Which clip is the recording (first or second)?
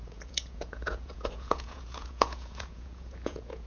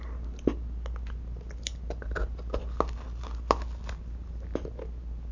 second